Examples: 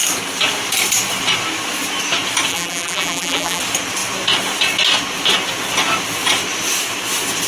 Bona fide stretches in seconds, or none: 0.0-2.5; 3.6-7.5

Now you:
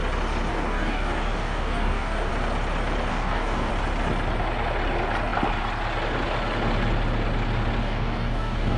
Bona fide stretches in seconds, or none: 0.0-0.5; 2.3-3.1; 3.7-7.8

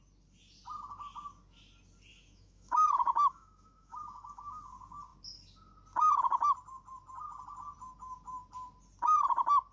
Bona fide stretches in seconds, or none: 0.0-2.1; 4.6-9.7

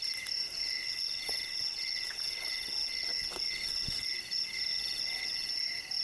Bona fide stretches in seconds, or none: 0.0-0.6; 4.2-4.7; 5.5-6.0

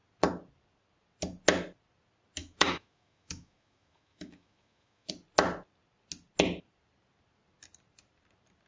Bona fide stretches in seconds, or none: 0.0-2.4; 5.1-8.7

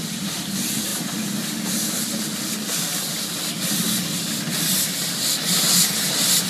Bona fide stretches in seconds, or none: 0.0-6.5

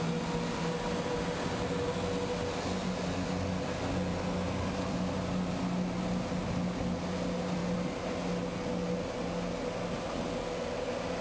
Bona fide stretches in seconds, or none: 0.0-4.1; 6.2-11.2